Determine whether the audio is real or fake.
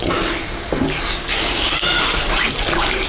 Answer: real